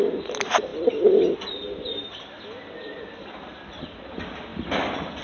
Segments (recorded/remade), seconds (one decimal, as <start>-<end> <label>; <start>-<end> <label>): 0.0-4.5 recorded; 4.5-5.2 remade

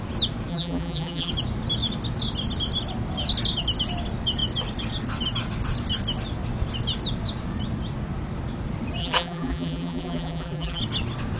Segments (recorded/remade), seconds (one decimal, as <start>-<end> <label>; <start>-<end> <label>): 0.0-0.5 recorded; 0.5-1.3 remade; 1.3-9.0 recorded; 9.0-10.8 remade; 10.8-11.4 recorded

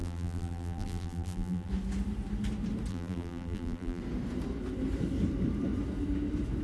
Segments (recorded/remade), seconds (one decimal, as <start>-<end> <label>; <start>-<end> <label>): 0.0-1.7 remade; 1.7-2.9 recorded; 2.9-4.0 remade; 4.0-6.6 recorded

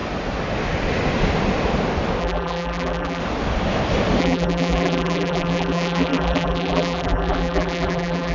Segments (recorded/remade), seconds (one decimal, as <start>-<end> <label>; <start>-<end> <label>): 0.0-2.2 recorded; 2.2-3.2 remade; 3.2-4.2 recorded; 4.2-8.3 remade